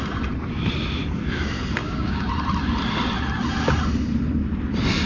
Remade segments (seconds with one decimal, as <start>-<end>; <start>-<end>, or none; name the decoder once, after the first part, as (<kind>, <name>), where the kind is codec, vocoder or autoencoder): 1.8-2.3 (codec, DAC)